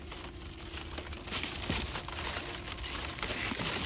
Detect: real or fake real